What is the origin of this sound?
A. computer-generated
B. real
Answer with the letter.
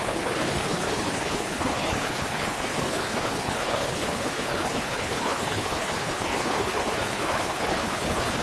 A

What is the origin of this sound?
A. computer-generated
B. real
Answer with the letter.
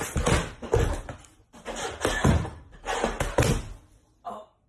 B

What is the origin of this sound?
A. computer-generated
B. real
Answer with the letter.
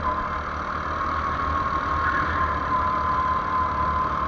B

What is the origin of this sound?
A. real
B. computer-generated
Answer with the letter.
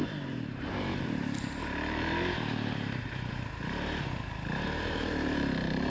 B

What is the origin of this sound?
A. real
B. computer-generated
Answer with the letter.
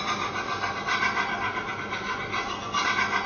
A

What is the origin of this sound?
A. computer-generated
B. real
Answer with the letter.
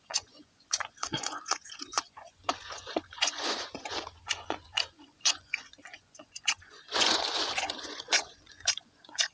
A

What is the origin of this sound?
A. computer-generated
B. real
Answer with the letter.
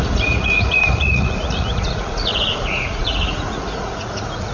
A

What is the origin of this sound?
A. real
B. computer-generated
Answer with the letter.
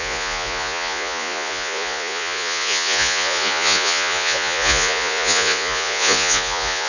B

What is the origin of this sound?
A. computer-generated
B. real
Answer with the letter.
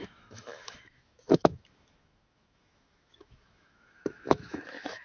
A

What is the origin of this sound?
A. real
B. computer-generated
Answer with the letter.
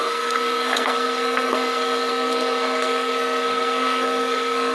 B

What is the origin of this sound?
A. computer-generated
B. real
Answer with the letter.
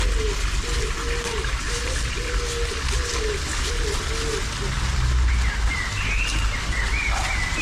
B